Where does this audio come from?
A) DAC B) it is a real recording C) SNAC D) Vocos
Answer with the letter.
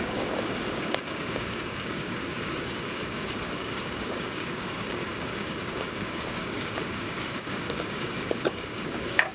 A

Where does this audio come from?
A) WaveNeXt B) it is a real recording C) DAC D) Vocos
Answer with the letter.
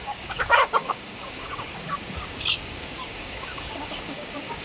C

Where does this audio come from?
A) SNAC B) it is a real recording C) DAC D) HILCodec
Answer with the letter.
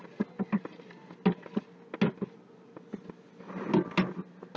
B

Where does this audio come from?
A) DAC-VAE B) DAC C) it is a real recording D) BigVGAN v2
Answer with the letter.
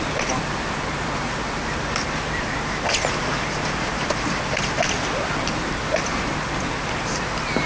C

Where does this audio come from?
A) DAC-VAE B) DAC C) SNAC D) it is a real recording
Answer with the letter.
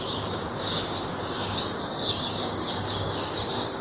B